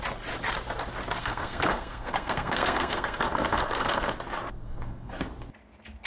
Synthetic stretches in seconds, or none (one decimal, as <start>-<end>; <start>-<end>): 1.2-4.1; 4.6-5.1